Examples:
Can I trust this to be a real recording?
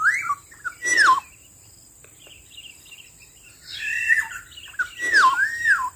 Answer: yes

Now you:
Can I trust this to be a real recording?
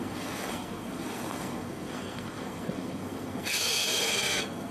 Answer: no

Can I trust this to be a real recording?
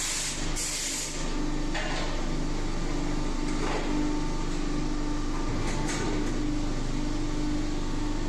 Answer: yes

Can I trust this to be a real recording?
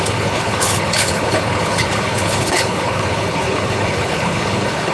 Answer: no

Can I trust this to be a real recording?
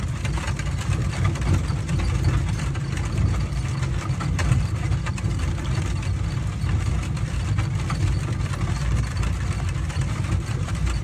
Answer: yes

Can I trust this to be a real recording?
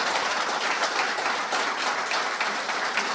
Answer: yes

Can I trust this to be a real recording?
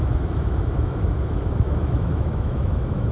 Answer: no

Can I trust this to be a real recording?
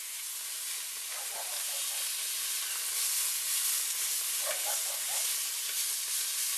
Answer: yes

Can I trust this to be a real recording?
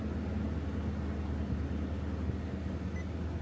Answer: yes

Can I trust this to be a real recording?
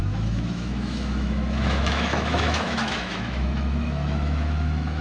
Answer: no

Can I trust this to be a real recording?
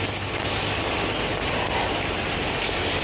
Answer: yes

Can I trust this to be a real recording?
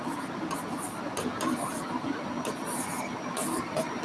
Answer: yes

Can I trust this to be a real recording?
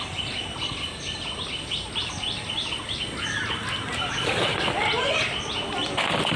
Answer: yes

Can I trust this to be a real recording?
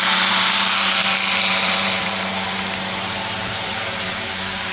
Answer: no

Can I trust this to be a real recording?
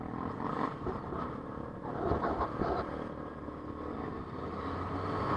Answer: yes